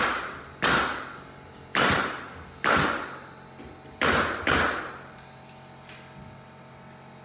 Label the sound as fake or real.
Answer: real